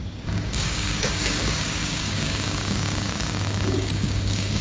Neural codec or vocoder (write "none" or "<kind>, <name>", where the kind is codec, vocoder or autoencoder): codec, DAC